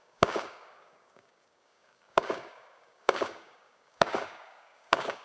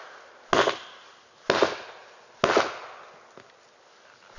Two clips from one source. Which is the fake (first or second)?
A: first